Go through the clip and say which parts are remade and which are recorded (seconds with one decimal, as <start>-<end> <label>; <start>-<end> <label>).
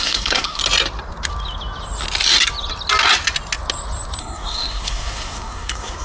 0.0-0.6 remade; 0.6-4.2 recorded; 4.2-6.0 remade